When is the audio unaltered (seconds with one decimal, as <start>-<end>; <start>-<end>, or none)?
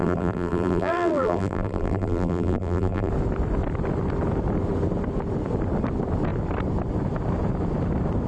3.1-8.3